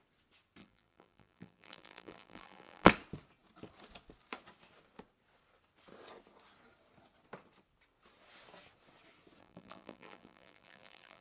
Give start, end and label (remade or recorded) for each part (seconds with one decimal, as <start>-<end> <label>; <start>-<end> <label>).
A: 0.0-0.6 recorded; 0.6-2.9 remade; 2.9-9.4 recorded; 9.4-11.2 remade